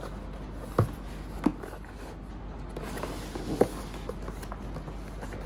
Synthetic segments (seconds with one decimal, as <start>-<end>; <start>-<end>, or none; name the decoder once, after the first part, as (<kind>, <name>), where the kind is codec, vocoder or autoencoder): none